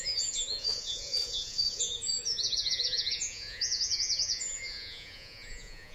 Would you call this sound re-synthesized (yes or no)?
yes